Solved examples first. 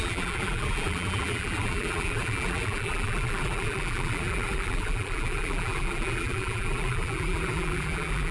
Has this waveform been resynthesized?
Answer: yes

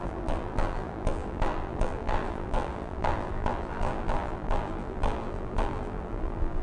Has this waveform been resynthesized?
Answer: yes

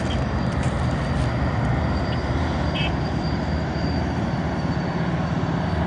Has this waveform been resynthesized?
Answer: yes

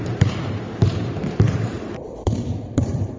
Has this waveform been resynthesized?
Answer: yes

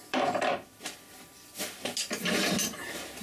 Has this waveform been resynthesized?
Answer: yes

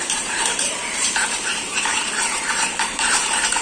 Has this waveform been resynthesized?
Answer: yes